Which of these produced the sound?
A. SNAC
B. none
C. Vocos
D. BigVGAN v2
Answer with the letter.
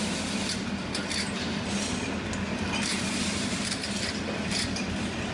B